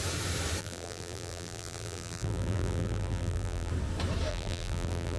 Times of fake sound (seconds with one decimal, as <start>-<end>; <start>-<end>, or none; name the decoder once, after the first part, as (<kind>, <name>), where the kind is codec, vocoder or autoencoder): 0.6-3.7 (vocoder, BigVGAN v2); 4.3-5.2

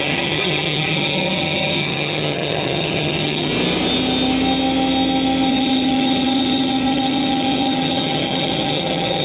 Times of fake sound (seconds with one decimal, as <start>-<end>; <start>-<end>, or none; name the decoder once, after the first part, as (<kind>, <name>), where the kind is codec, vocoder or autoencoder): 0.0-3.5 (vocoder, HiFi-GAN); 5.5-9.2

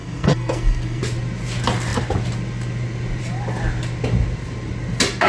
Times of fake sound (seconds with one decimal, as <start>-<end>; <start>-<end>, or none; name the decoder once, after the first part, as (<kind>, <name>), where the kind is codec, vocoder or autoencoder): 0.0-1.0 (codec, SNAC)

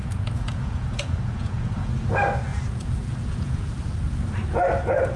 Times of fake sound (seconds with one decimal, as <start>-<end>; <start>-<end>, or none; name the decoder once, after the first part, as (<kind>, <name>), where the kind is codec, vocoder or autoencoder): 0.0-1.9 (vocoder, Vocos); 2.5-3.7

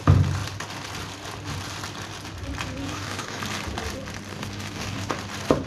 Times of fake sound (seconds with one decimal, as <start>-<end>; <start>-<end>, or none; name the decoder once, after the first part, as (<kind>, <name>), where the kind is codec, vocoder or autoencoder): 2.8-3.4 (codec, DAC); 4.3-5.1

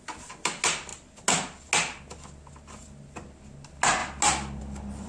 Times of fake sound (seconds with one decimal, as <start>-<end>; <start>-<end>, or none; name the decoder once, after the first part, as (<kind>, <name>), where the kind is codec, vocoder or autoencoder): none

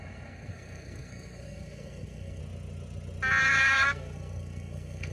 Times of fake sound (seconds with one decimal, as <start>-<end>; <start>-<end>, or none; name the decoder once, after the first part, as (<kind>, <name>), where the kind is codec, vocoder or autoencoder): 0.0-2.4 (codec, SNAC); 3.4-5.1